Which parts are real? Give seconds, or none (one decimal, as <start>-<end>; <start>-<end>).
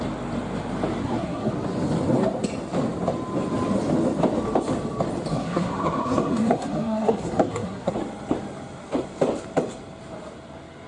0.0-1.0; 1.5-5.3; 7.9-10.9